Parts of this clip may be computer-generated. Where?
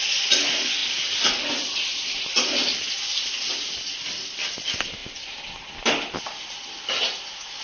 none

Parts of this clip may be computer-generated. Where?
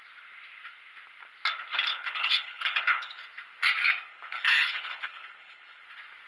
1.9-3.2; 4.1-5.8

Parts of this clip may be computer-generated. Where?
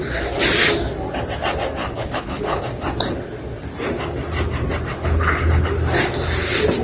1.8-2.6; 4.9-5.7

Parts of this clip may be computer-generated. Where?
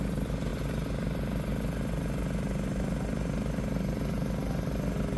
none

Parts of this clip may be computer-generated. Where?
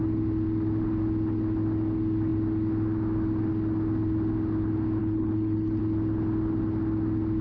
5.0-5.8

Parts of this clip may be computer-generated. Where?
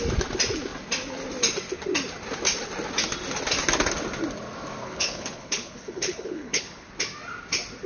4.8-6.9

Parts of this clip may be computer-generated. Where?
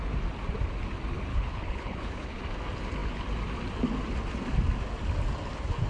1.3-2.4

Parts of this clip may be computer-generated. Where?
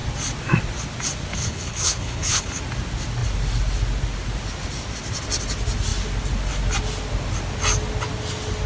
1.3-2.6